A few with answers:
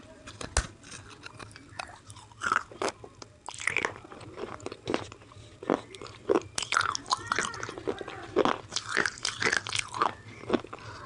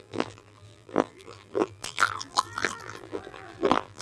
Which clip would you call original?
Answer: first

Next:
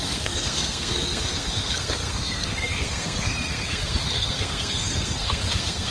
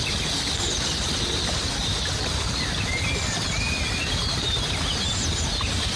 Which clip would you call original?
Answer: second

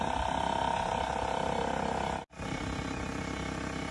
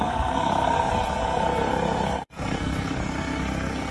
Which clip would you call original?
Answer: first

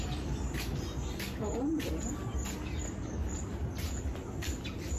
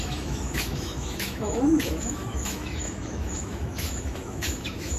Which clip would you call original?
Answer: first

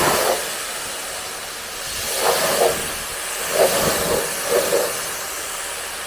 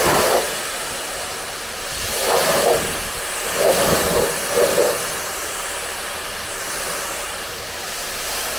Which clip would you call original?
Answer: first